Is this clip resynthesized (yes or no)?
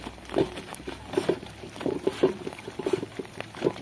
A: no